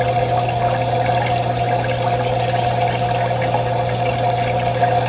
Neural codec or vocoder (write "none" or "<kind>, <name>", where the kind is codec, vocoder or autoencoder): none